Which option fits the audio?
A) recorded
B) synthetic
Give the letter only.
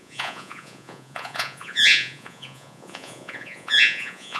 B